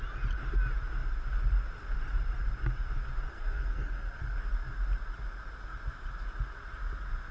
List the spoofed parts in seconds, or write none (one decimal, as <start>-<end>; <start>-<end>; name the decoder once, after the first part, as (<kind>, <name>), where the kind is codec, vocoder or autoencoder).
3.3-3.9 (codec, SNAC)